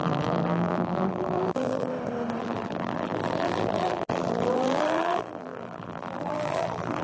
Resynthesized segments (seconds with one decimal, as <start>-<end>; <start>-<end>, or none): 0.0-1.9; 2.4-7.0